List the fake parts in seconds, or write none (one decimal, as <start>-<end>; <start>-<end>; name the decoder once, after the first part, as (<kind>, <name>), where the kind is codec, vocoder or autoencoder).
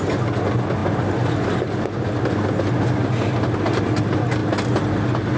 none